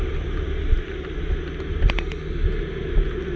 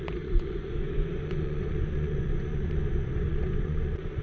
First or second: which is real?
first